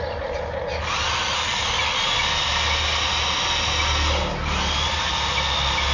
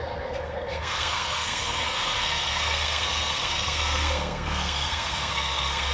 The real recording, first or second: first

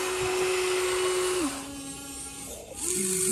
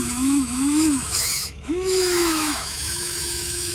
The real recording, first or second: first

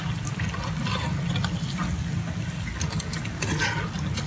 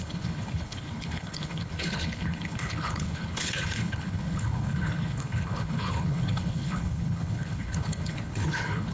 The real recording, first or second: first